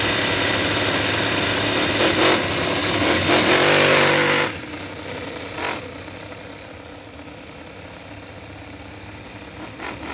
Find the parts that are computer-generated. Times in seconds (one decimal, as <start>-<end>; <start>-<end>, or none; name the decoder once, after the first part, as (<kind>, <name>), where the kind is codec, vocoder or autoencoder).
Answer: 2.8-3.3 (codec, DAC)